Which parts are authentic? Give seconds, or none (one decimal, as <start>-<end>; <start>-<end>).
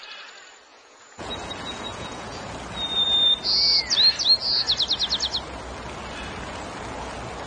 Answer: 0.0-0.7; 2.5-7.5